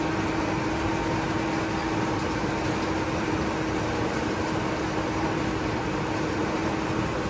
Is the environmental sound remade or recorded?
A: recorded